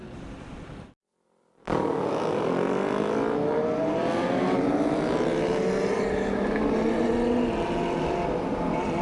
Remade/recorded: recorded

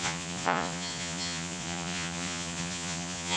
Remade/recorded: remade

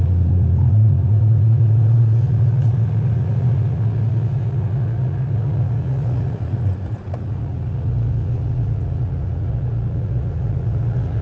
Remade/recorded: remade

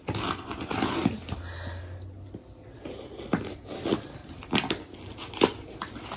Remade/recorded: recorded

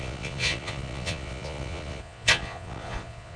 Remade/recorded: remade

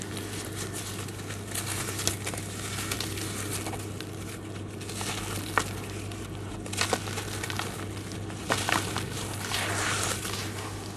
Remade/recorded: recorded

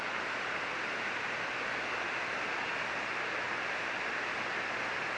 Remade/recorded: recorded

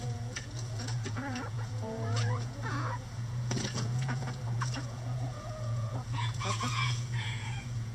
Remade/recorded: remade